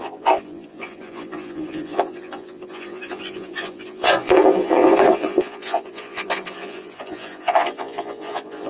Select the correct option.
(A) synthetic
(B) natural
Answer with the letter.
A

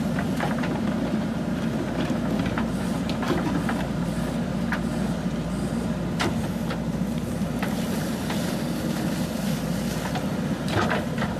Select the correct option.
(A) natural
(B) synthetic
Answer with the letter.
A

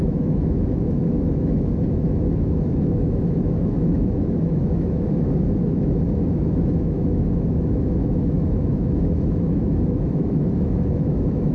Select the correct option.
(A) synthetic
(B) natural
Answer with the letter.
A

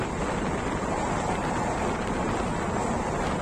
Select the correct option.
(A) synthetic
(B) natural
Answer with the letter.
B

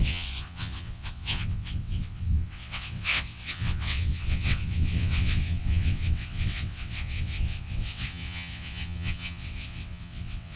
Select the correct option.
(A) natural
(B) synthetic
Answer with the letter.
B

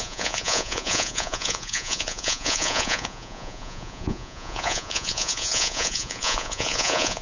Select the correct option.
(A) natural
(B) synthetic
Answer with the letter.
B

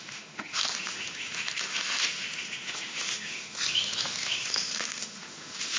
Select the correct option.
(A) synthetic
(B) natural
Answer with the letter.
A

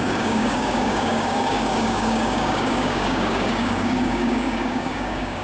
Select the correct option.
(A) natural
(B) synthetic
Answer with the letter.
B